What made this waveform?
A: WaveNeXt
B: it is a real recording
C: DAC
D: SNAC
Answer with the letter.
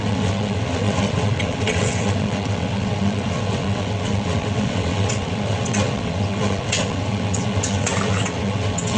A